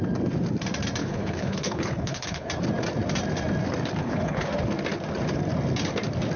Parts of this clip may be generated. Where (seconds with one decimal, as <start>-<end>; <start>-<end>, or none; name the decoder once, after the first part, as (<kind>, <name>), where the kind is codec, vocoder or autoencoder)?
1.0-2.5 (codec, HILCodec); 4.0-4.5